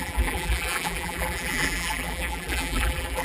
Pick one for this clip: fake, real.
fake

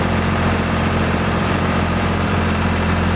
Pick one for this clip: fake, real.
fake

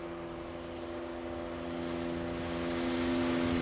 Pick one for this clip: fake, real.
real